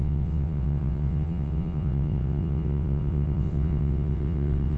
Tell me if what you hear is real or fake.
fake